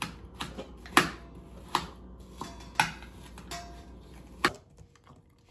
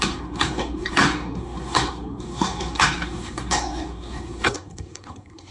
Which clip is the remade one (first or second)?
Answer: second